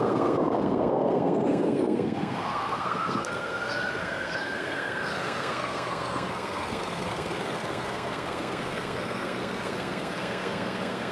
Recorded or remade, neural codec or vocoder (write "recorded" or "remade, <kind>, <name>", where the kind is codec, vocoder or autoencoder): remade, codec, SNAC